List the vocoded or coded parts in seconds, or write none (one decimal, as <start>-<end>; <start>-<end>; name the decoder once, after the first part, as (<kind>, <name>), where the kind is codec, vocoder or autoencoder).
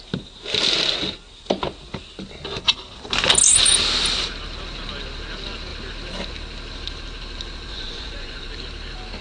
7.7-8.5 (vocoder, Vocos)